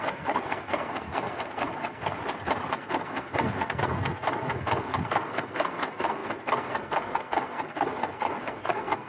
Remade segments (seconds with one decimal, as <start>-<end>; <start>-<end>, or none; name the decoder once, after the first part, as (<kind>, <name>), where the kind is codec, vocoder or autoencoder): 0.0-2.2 (codec, SNAC); 2.7-9.1